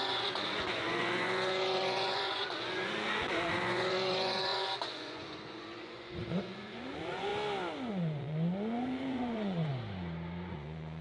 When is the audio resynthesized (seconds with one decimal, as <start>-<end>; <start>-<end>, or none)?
0.0-7.3; 7.9-9.7; 10.5-11.0